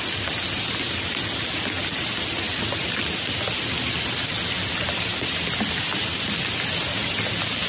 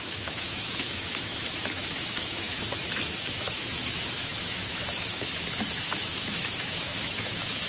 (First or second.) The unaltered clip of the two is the first